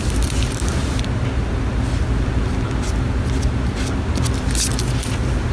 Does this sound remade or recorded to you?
recorded